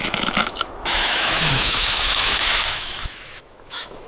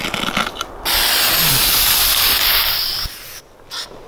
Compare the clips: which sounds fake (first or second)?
first